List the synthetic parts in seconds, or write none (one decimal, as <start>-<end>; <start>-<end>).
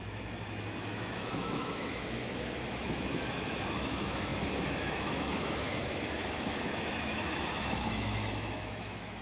0.0-9.2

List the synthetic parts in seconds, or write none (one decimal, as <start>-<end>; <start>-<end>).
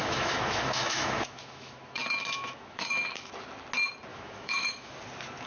0.0-3.3; 4.1-4.9